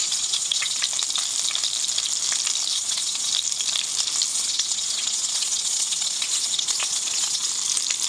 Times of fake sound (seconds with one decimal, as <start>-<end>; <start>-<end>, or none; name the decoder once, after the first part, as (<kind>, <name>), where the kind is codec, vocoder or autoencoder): 0.0-0.8 (vocoder, Vocos); 2.7-3.3; 4.3-7.5